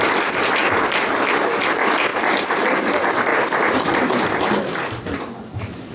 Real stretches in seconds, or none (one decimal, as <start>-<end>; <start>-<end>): 0.0-3.3; 5.2-5.9